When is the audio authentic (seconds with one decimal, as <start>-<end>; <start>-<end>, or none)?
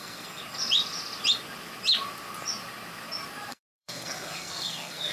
0.4-3.5